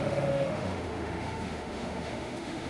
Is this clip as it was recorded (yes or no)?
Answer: no